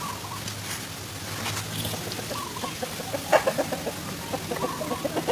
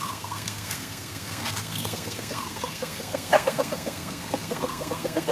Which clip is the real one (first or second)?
first